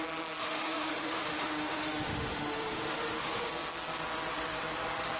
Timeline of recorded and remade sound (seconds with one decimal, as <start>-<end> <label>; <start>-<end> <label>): 0.0-0.4 recorded; 0.4-3.5 remade; 3.5-5.2 recorded